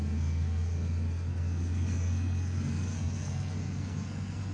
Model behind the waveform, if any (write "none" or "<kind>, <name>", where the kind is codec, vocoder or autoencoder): codec, SNAC